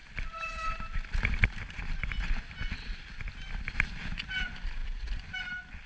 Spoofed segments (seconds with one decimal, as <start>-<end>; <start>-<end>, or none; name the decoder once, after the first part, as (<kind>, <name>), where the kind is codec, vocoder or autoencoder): 4.8-5.9 (vocoder, BigVGAN v2)